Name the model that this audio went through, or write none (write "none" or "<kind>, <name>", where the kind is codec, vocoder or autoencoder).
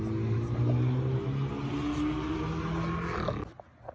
none